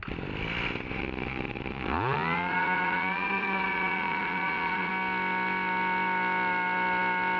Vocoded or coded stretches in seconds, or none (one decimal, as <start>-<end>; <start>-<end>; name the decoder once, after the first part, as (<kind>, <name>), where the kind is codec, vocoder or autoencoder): 1.0-4.9 (vocoder, Vocos)